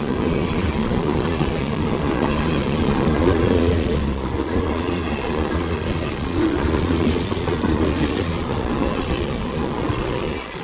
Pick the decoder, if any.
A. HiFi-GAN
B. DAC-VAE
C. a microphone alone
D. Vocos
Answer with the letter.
D